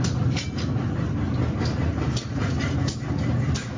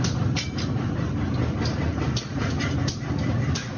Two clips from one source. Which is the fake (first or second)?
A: second